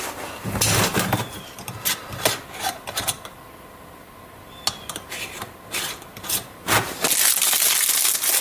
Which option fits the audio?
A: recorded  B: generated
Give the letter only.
A